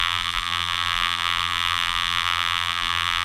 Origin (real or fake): fake